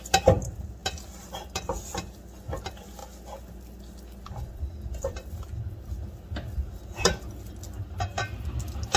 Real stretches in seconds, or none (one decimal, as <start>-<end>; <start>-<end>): 0.0-9.0